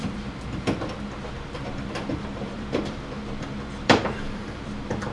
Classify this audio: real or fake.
fake